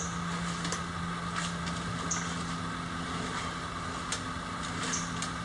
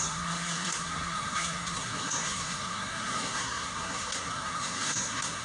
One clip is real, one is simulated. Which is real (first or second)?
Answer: first